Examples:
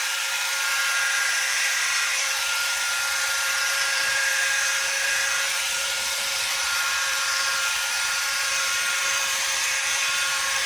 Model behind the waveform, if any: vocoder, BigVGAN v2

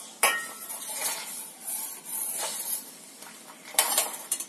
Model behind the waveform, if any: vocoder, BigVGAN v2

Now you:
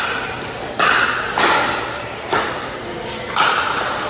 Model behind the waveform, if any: none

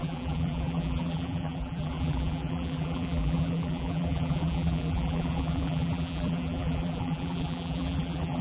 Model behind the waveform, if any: vocoder, BigVGAN v2